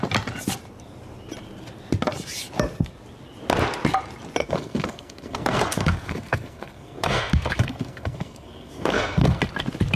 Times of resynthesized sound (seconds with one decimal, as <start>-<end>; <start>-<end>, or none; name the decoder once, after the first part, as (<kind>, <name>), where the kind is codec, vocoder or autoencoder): 4.4-9.4 (codec, SNAC)

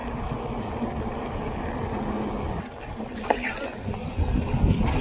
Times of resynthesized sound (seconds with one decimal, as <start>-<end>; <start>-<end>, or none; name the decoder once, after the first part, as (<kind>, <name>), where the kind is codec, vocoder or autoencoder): none

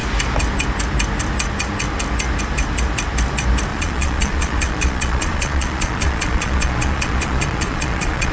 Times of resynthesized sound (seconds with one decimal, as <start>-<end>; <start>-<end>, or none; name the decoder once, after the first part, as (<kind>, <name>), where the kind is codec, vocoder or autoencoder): 3.7-8.3 (vocoder, Vocos)

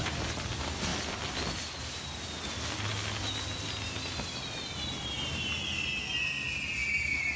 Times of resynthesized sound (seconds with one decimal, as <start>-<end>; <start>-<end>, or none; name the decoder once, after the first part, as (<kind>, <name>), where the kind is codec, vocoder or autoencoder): none

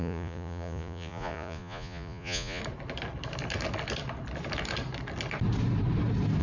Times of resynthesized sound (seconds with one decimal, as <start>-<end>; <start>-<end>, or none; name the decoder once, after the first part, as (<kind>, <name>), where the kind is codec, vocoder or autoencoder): 0.0-2.6 (vocoder, Vocos)

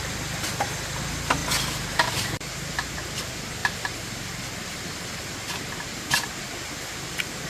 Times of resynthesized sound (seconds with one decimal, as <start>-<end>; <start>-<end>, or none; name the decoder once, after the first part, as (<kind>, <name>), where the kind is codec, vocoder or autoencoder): 3.6-4.8 (vocoder, BigVGAN v2)

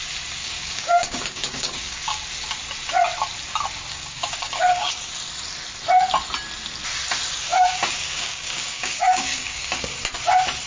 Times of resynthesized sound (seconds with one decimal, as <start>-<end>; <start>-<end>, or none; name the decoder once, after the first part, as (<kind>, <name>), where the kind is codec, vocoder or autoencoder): 0.4-2.2 (codec, DAC); 3.9-5.1; 7.5-10.0